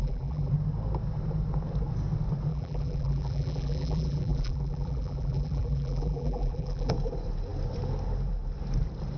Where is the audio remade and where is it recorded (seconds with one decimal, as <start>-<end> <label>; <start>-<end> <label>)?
0.0-0.5 remade; 0.5-2.5 recorded; 2.5-6.9 remade; 6.9-9.2 recorded